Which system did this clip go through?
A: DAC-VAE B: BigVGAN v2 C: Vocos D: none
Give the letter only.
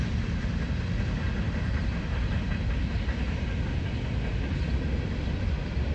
D